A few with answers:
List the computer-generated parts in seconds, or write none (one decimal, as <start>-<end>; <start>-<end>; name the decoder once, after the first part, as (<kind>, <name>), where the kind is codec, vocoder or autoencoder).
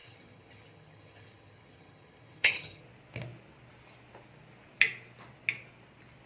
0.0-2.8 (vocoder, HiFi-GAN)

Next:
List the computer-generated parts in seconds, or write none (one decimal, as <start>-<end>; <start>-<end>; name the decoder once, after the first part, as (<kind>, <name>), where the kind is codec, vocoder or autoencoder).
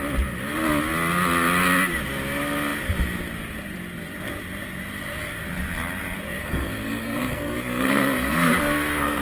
6.4-9.2 (codec, SNAC)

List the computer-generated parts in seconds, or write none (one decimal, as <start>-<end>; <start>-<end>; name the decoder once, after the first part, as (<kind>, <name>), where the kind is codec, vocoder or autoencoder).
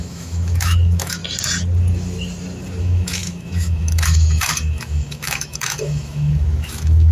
0.0-1.2 (autoencoder, DAC-VAE); 2.8-7.1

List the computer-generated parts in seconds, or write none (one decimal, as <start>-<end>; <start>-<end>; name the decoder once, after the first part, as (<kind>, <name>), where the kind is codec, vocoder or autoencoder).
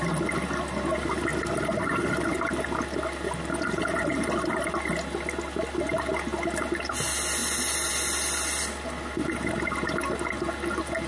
none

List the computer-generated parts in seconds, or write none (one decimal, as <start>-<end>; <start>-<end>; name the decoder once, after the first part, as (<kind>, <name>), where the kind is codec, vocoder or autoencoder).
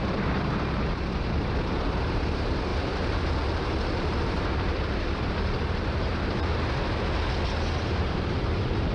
0.0-6.5 (vocoder, BigVGAN v2); 8.0-8.9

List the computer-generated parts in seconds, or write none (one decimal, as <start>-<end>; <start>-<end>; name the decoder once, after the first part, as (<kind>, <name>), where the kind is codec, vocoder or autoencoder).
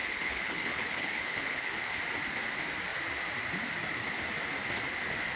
0.0-2.0 (codec, HILCodec)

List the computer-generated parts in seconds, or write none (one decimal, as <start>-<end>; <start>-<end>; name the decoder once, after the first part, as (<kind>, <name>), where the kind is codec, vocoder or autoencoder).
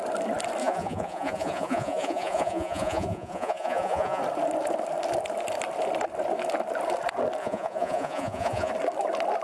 0.6-4.2 (vocoder, Vocos); 7.4-8.7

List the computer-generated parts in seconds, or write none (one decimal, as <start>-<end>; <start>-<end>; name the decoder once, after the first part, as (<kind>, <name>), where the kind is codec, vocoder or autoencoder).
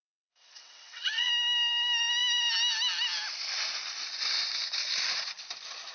0.0-1.3 (vocoder, WaveNeXt)